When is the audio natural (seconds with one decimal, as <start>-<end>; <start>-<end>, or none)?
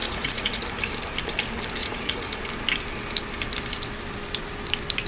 0.6-1.8; 2.4-5.1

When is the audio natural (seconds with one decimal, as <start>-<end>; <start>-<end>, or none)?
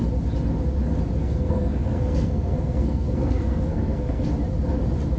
0.0-1.2; 4.3-5.2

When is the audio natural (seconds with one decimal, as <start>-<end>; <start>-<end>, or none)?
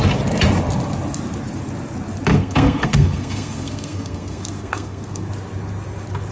0.0-2.3; 5.3-6.3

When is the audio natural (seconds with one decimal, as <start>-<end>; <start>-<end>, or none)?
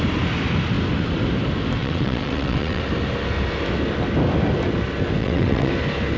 0.0-1.8; 2.8-5.2; 5.7-6.2